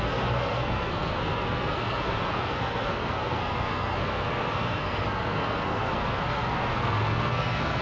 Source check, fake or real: fake